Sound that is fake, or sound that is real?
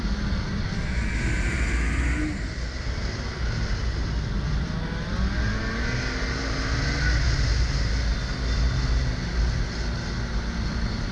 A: real